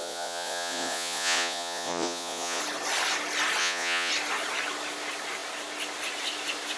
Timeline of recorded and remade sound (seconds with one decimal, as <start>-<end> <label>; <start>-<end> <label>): 0.0-2.6 remade; 2.6-3.6 recorded; 3.6-4.1 remade; 4.1-6.8 recorded